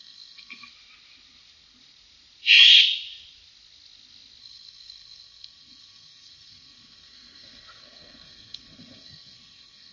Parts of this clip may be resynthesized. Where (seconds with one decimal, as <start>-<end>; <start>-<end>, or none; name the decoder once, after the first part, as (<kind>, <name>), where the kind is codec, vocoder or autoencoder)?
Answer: 0.0-0.7 (codec, SNAC); 4.4-9.9

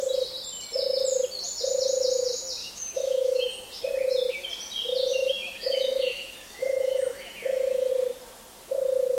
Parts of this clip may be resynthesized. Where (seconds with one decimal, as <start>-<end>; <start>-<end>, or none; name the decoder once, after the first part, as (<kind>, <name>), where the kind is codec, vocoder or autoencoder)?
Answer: 2.6-3.8 (autoencoder, DAC-VAE); 5.1-7.9

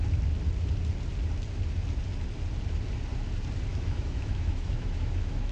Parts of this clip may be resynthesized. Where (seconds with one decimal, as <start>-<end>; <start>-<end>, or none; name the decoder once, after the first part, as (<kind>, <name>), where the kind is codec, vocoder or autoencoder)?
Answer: 3.7-5.5 (autoencoder, DAC-VAE)

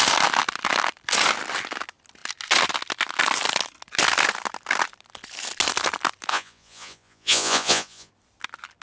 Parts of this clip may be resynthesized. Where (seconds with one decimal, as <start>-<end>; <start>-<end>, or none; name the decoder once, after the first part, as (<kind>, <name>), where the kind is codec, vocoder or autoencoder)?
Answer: 6.3-8.1 (vocoder, Vocos)

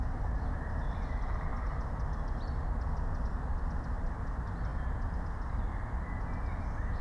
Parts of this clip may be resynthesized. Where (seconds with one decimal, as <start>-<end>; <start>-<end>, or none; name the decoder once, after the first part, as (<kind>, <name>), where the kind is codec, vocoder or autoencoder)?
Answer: none

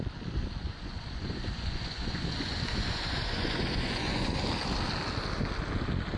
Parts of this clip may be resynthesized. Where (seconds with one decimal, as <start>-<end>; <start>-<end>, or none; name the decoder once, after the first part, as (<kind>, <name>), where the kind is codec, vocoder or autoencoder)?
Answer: 0.6-4.3 (vocoder, Vocos)

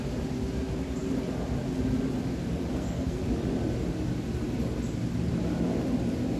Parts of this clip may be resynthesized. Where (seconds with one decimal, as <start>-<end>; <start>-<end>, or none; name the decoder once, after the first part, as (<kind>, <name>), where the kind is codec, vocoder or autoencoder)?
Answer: 2.7-3.2 (codec, SNAC)